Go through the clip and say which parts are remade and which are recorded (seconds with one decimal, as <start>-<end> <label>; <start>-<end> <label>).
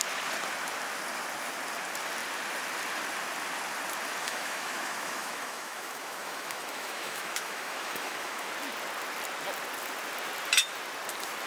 0.0-4.2 recorded; 4.2-8.5 remade; 8.5-11.5 recorded